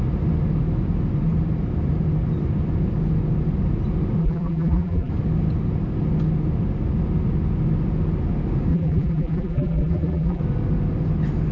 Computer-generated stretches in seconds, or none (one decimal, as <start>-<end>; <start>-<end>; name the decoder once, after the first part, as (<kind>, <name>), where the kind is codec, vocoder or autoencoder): 4.2-5.1 (vocoder, BigVGAN v2); 8.7-10.4